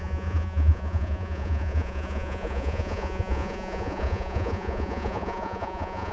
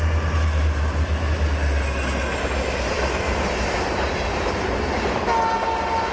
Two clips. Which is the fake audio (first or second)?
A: first